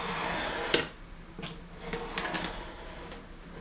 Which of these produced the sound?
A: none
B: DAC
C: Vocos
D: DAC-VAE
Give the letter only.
A